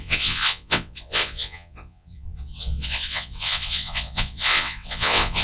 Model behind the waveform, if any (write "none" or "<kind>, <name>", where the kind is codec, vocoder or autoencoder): vocoder, WaveNeXt